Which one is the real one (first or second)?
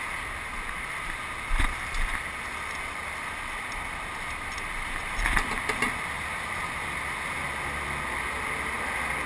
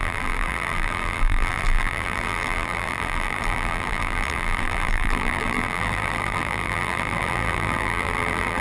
first